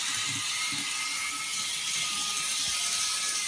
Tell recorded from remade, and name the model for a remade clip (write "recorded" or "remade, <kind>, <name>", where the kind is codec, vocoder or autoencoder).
recorded